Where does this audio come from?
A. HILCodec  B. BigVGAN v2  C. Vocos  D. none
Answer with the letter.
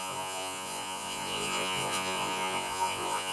C